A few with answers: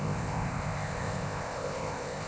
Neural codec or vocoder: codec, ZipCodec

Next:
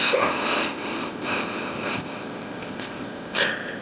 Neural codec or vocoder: codec, ZipCodec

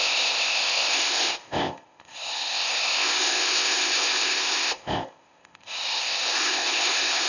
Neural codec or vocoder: codec, ZipCodec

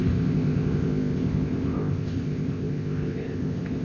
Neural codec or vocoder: codec, ZipCodec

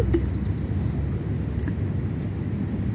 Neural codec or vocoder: none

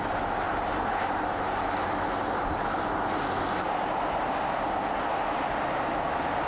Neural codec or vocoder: none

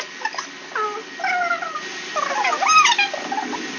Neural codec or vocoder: none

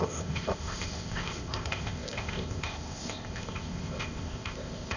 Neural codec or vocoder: codec, ZipCodec